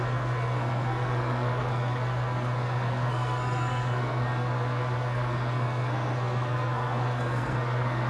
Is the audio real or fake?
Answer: fake